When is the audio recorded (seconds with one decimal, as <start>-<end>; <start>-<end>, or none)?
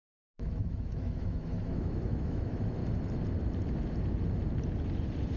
2.8-5.4